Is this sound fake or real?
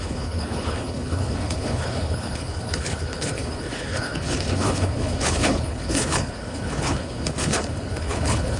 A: fake